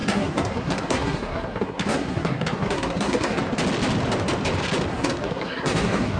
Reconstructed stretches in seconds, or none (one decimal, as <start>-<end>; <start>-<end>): 0.0-3.4; 4.9-6.2